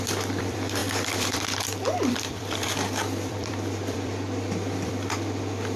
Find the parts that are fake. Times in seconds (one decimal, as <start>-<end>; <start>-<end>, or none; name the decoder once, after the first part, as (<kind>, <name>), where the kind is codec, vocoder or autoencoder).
0.0-5.8 (vocoder, BigVGAN v2)